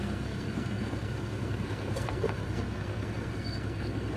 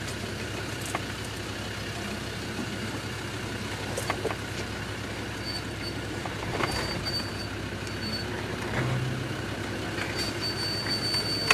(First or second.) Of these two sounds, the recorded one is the second